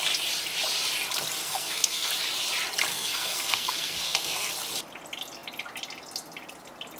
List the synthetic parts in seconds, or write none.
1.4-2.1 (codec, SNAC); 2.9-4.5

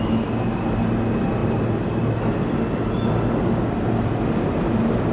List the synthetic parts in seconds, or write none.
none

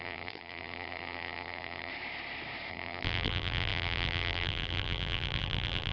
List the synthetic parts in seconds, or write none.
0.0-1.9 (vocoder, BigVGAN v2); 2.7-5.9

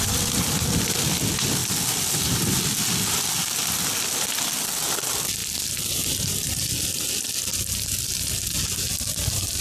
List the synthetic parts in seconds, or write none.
none

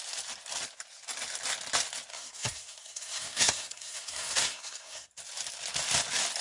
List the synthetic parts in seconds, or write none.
2.1-5.1 (codec, SNAC)